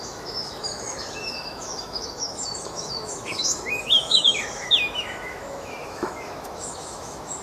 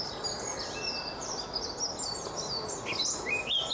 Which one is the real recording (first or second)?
second